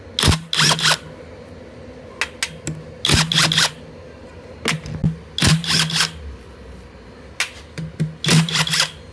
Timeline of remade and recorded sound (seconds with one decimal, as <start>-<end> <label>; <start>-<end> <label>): 0.0-9.1 recorded